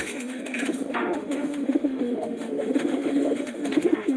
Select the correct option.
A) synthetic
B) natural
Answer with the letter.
A